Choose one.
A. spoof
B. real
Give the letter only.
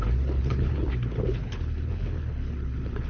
A